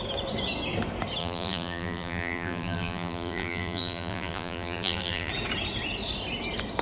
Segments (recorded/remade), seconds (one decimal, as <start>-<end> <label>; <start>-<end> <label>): 0.0-1.2 recorded; 1.2-5.3 remade; 5.3-6.8 recorded